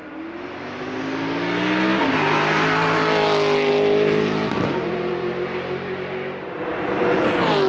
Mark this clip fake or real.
real